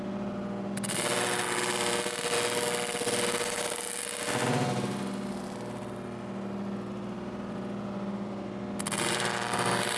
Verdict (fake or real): real